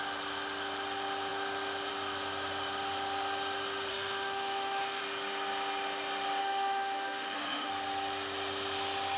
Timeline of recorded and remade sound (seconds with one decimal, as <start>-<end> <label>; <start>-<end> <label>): 0.0-3.9 recorded; 3.9-5.0 remade; 5.0-6.4 recorded; 6.4-7.7 remade; 7.7-9.2 recorded